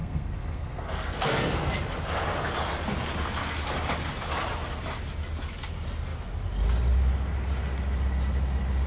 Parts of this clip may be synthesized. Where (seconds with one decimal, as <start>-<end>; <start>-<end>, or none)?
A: 0.0-1.7